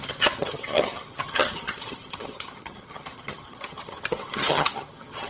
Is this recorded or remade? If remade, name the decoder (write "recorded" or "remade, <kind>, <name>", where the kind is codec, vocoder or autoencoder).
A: remade, vocoder, HiFi-GAN